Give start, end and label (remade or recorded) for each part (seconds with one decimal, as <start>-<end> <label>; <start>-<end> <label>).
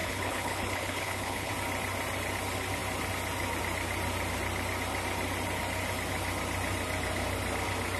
0.0-1.5 remade; 1.5-8.0 recorded